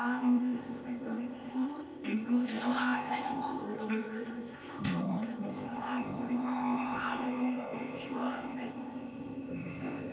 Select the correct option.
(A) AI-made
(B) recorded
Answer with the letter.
A